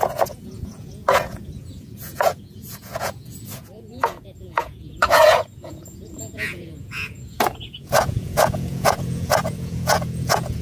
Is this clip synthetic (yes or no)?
yes